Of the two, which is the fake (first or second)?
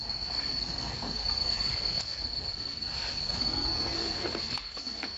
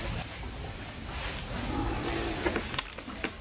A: first